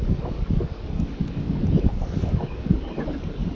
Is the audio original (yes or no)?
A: no